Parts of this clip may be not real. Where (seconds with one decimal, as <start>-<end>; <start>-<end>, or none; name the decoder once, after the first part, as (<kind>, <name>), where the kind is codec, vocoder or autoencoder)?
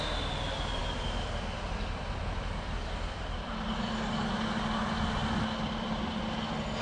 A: 0.8-3.7 (vocoder, BigVGAN v2)